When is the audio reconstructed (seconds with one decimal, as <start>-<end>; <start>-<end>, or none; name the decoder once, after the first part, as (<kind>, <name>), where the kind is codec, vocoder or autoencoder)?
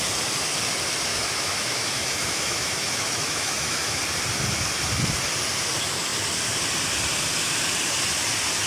1.1-4.0 (autoencoder, DAC-VAE)